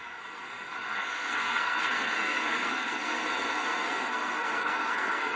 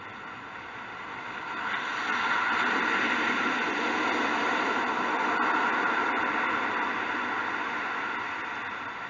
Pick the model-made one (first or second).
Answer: first